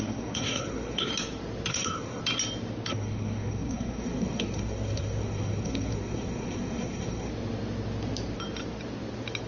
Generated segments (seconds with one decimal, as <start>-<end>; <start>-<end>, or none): 0.0-1.1; 1.7-2.2; 2.9-7.3